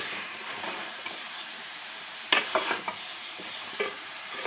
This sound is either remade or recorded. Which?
remade